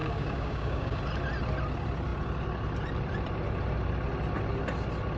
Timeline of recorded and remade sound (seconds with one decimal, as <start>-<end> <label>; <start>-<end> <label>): 0.0-1.0 remade; 1.0-5.2 recorded